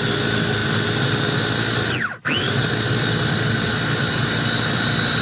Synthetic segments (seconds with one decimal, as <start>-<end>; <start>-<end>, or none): none